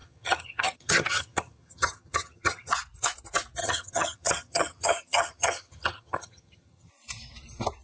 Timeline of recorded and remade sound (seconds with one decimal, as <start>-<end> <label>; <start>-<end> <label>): 0.0-2.7 remade; 2.7-3.6 recorded; 3.6-6.9 remade; 6.9-7.8 recorded